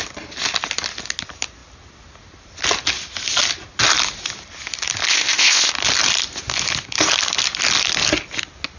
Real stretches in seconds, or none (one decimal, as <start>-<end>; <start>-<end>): 0.0-5.1; 5.7-8.8